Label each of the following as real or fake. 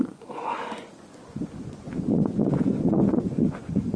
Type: fake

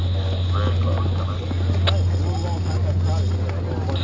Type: real